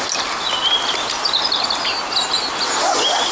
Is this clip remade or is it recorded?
recorded